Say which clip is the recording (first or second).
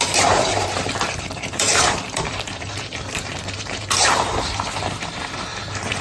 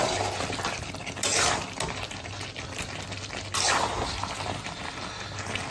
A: second